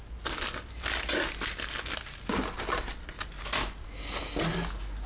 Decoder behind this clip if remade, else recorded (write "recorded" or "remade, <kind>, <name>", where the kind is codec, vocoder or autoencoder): recorded